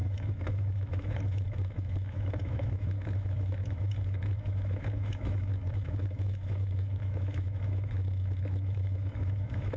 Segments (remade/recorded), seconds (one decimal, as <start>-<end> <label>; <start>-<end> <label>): 0.0-9.8 remade